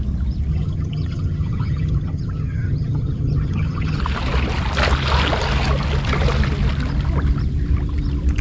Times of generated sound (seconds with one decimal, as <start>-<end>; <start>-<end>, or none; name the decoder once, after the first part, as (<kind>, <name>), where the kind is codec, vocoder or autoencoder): 0.5-4.0 (vocoder, HiFi-GAN)